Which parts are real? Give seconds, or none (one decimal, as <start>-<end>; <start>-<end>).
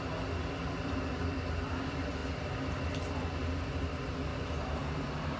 0.0-4.3